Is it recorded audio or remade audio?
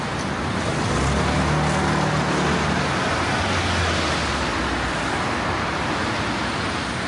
recorded